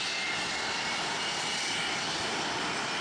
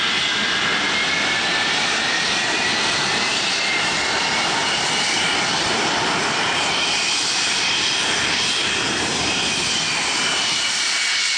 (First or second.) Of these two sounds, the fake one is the second